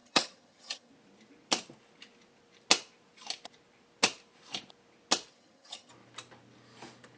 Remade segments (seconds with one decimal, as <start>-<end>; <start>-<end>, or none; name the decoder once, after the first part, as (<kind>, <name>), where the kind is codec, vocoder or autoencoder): 0.0-0.9 (vocoder, HiFi-GAN); 5.3-5.9